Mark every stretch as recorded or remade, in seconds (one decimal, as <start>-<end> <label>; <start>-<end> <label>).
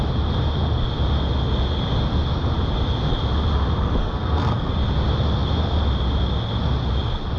0.0-4.0 recorded; 4.0-4.7 remade; 4.7-7.4 recorded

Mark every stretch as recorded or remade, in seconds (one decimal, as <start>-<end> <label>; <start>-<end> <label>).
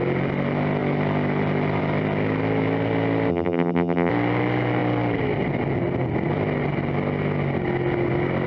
0.0-3.3 recorded; 3.3-4.1 remade; 4.1-8.5 recorded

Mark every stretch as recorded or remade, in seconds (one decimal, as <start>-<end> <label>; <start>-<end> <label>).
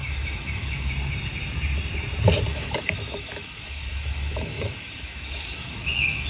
0.0-0.9 remade; 0.9-2.5 recorded; 2.5-6.3 remade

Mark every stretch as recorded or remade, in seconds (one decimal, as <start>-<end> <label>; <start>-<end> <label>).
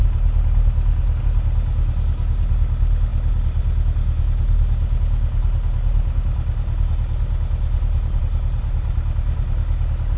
0.0-10.2 recorded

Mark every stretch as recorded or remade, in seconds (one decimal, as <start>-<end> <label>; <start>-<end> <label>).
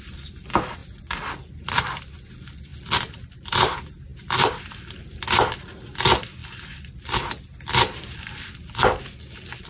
0.0-2.7 recorded; 2.7-3.5 remade; 3.5-4.1 recorded; 4.1-4.8 remade; 4.8-6.4 recorded; 6.4-7.3 remade; 7.3-9.7 recorded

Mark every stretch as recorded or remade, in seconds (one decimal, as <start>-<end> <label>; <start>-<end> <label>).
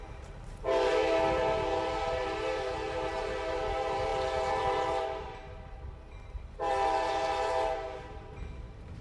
0.0-9.0 remade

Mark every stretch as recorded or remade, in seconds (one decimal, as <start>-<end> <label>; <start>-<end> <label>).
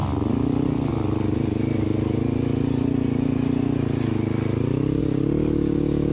0.0-6.1 recorded